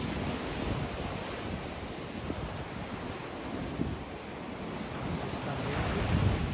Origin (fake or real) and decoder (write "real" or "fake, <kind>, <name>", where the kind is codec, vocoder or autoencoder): real